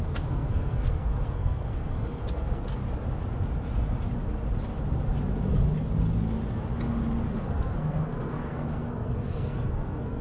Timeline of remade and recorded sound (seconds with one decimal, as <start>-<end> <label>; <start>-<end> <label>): 0.0-2.8 remade; 2.8-7.3 recorded; 7.3-10.2 remade